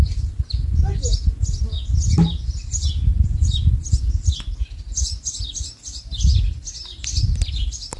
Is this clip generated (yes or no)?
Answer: no